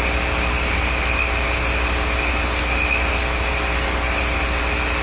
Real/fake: real